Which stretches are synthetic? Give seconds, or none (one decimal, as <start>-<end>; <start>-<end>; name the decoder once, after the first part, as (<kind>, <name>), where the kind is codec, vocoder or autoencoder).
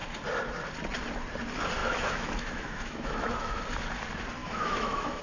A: 1.8-3.6 (autoencoder, DAC-VAE); 4.4-5.2